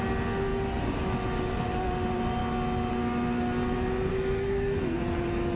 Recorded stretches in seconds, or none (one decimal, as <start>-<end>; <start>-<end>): 0.0-4.1; 5.0-5.6